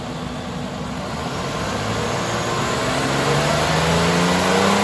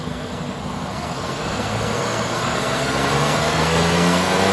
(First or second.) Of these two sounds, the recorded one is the first